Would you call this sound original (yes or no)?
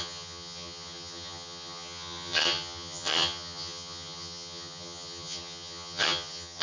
no